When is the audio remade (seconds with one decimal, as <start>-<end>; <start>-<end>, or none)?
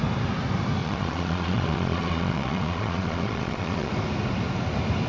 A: 0.8-3.9